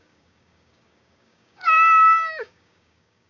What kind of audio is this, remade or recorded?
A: remade